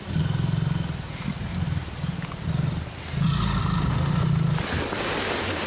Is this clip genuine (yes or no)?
yes